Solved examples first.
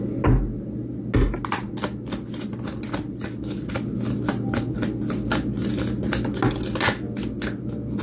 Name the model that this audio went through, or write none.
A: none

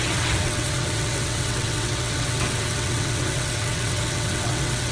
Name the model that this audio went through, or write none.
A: vocoder, WaveNeXt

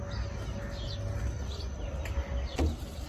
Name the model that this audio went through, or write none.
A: none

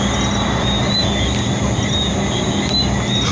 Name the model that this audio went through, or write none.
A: none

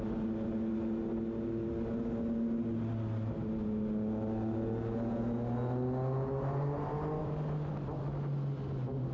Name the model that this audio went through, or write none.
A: none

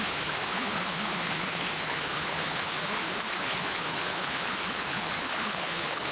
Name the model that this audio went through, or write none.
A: codec, HILCodec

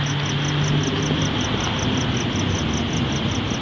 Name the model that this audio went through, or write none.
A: none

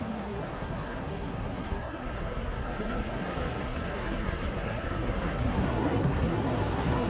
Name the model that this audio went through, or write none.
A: codec, SNAC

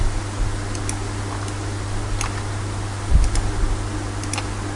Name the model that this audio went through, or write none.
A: none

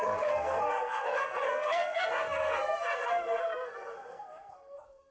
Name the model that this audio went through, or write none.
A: codec, SNAC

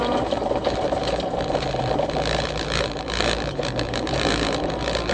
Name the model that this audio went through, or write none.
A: vocoder, BigVGAN v2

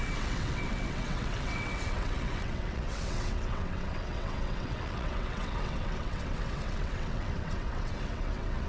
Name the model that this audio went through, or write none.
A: vocoder, WaveNeXt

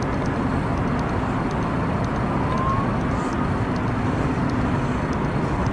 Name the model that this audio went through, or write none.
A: none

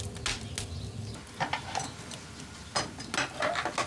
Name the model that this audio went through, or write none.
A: none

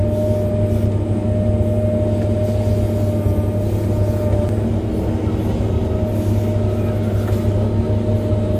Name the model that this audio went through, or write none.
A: none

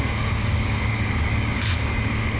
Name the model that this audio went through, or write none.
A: codec, DAC